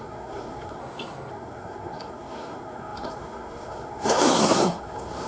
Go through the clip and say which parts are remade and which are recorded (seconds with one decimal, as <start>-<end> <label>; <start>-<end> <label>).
0.0-0.8 remade; 0.8-1.3 recorded; 1.3-5.3 remade